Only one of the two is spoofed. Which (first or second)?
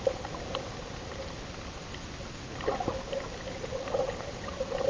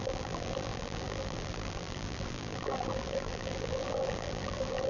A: second